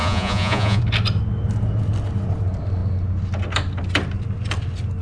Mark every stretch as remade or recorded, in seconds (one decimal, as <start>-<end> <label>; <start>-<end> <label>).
0.0-0.8 remade; 0.8-5.0 recorded